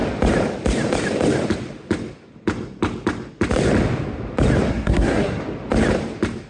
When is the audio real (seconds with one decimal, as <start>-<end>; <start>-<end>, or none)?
0.0-4.7; 5.4-6.5